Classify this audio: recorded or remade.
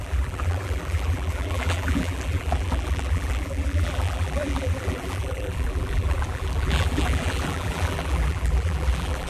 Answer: remade